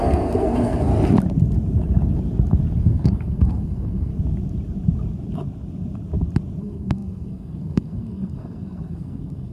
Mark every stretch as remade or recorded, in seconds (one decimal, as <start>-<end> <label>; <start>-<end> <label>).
0.0-0.9 remade; 0.9-2.8 recorded; 2.8-4.1 remade; 4.1-6.6 recorded; 6.6-9.5 remade

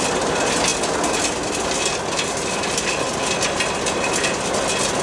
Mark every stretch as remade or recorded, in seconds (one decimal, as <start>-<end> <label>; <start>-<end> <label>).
0.0-5.0 recorded